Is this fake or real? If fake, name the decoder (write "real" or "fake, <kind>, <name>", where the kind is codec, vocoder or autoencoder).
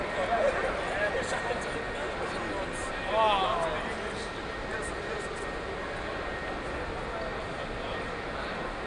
real